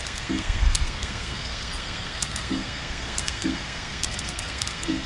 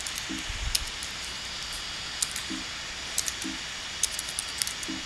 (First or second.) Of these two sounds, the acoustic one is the second